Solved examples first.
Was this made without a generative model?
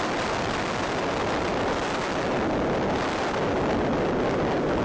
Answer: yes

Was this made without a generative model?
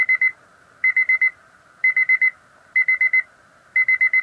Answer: yes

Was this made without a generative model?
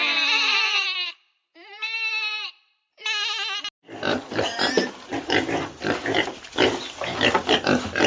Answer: yes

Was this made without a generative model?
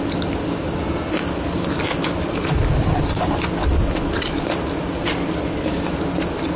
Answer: yes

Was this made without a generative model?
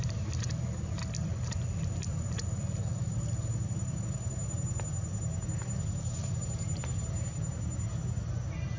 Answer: yes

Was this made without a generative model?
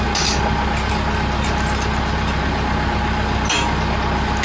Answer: yes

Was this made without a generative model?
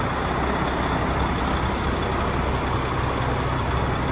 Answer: yes